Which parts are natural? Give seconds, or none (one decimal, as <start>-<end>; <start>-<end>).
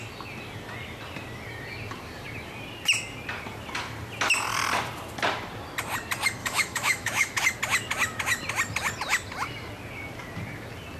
0.0-6.4; 7.4-11.0